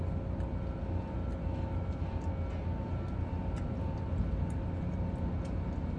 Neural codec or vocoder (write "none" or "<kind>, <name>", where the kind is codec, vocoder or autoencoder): none